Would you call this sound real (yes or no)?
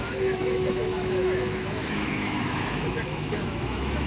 no